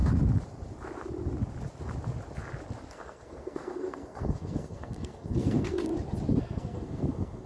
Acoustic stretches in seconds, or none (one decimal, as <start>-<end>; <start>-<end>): 0.0-2.9; 5.9-6.4